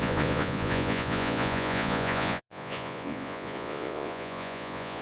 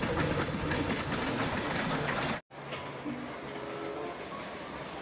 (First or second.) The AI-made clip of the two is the first